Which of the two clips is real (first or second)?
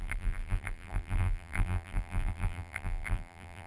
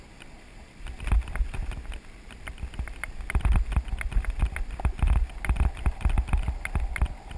second